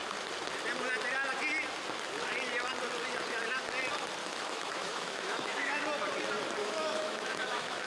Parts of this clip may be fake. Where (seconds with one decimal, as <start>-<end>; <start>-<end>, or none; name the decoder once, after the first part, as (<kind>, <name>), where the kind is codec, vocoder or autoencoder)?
4.2-5.8 (autoencoder, DAC-VAE); 6.6-7.9